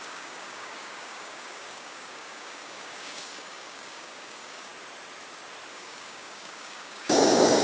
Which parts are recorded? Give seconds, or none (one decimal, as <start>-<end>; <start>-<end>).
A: 4.7-5.7

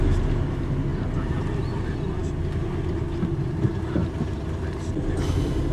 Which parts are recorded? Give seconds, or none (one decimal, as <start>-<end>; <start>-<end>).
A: 0.0-5.7

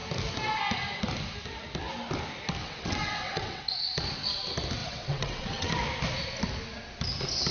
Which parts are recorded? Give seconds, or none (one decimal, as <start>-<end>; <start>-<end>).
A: 0.0-2.6; 3.6-4.8; 5.7-7.5